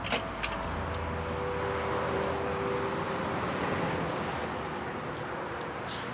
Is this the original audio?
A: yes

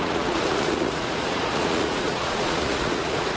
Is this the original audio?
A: no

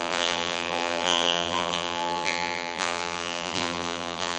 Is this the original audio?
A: no